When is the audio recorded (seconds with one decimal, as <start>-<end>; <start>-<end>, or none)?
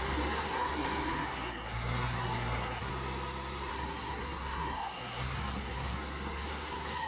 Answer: 2.9-3.7